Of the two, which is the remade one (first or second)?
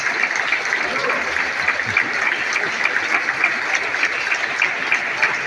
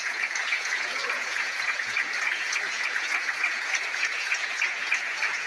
second